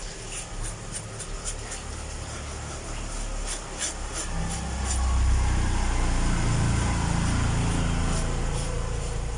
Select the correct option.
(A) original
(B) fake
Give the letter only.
A